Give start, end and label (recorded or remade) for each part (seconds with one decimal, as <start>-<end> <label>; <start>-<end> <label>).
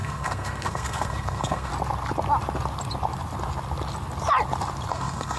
0.0-1.7 remade; 1.7-4.9 recorded; 4.9-5.4 remade